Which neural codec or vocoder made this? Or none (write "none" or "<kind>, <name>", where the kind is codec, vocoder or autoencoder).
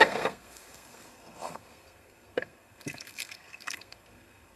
codec, SNAC